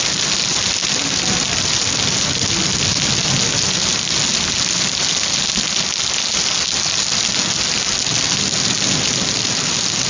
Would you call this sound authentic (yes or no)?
yes